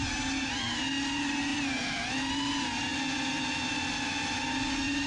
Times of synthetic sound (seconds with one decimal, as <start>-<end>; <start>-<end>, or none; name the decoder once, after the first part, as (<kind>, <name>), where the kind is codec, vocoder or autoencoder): none